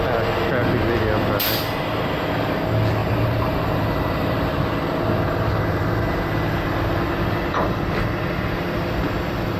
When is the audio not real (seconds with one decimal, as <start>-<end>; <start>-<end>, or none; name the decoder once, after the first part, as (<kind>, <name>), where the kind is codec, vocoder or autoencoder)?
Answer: 3.0-4.5 (vocoder, BigVGAN v2)